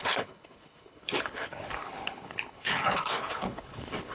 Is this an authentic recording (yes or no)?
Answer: no